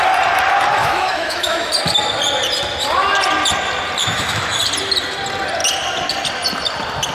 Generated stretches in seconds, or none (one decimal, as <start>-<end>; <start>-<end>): 0.8-1.7; 4.0-4.6